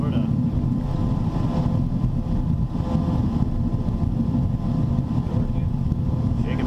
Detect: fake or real real